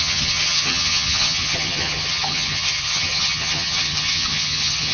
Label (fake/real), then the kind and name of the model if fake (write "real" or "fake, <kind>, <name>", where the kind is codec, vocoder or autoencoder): fake, vocoder, HiFi-GAN